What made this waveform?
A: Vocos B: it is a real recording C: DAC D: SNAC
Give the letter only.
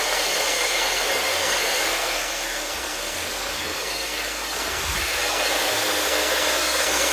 D